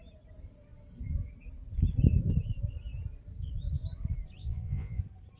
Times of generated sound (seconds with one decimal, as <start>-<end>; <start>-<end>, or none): 4.4-5.0

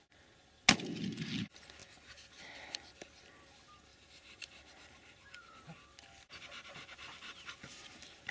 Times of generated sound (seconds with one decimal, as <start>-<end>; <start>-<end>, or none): 3.9-5.6

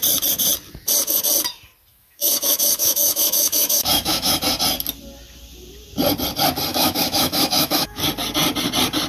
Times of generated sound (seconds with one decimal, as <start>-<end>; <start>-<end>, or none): 1.9-4.4; 6.7-8.0

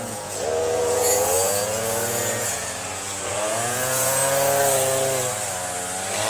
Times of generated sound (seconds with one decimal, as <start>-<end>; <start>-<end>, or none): 0.0-4.2

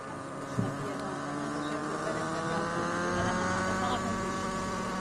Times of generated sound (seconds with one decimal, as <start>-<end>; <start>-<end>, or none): none

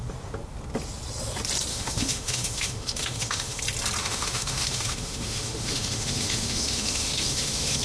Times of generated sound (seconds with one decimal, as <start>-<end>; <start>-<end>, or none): 1.7-3.6; 4.0-7.8

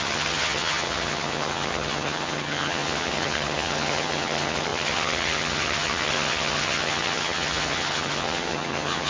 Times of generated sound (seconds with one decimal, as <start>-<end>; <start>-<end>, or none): 0.0-9.1